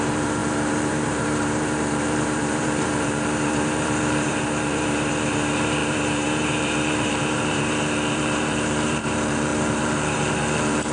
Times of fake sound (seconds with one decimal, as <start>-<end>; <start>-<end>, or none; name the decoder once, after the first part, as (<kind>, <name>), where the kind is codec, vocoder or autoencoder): 0.0-10.9 (vocoder, BigVGAN v2)